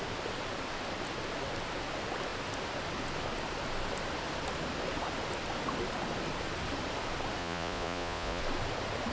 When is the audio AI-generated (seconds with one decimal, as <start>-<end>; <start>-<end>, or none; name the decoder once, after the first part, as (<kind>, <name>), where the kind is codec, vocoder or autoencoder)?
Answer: 7.4-8.4 (vocoder, Vocos)